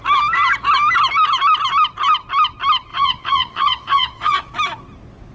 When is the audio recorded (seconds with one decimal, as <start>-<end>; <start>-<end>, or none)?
0.0-2.9; 4.5-5.3

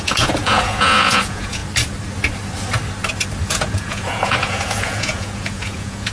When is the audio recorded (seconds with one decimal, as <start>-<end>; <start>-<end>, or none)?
1.6-3.5

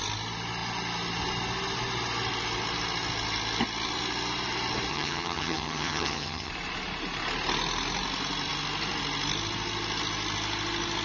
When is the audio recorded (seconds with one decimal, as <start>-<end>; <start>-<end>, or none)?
0.0-4.9; 6.5-11.0

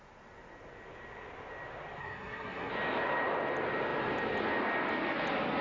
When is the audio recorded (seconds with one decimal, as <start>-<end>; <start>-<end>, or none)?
0.0-2.0; 2.7-5.6

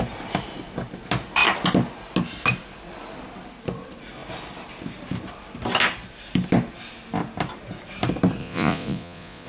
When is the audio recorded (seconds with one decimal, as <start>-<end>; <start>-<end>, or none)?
0.0-8.4